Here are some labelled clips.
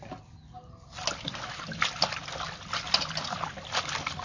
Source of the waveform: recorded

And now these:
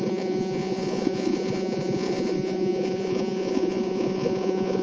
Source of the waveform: remade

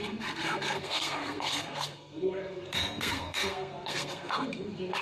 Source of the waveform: remade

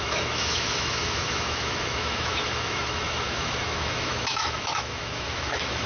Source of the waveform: remade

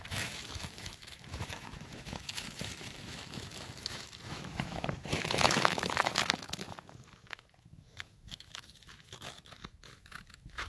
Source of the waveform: remade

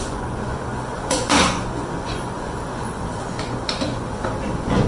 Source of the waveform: remade